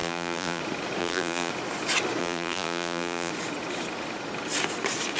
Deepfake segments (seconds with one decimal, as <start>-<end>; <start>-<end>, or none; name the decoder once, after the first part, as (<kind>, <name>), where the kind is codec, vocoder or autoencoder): 0.0-0.6 (vocoder, BigVGAN v2); 1.0-1.5; 2.2-3.3